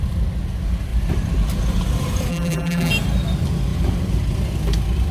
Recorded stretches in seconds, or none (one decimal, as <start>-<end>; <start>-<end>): 0.0-2.3; 2.9-5.1